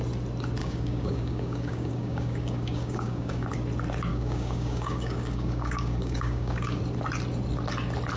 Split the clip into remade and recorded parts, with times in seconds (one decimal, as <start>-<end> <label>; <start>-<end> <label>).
0.0-0.6 recorded; 0.6-3.5 remade; 3.5-4.1 recorded; 4.1-6.8 remade; 6.8-8.2 recorded